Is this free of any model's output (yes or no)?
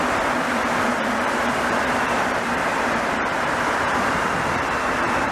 no